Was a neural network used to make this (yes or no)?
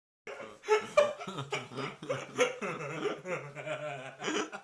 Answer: no